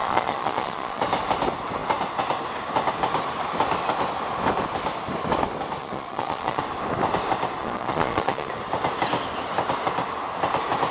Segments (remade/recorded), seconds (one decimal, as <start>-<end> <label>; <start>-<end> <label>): 0.0-1.0 remade; 1.0-5.8 recorded; 5.8-6.6 remade; 6.6-7.6 recorded; 7.6-8.5 remade; 8.5-10.9 recorded